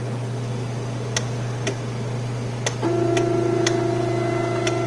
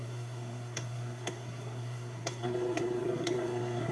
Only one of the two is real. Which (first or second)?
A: first